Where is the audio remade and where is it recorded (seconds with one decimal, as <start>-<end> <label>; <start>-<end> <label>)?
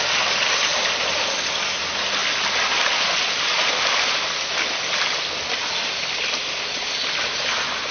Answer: 0.0-7.9 recorded